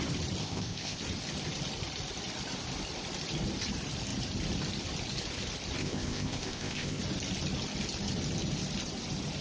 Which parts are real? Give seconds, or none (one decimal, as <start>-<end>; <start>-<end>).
0.0-0.4; 1.0-5.8; 7.0-9.4